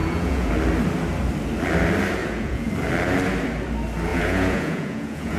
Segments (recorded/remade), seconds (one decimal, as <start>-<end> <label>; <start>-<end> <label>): 0.0-0.5 remade; 0.5-2.2 recorded; 2.2-2.7 remade; 2.7-4.1 recorded; 4.1-5.4 remade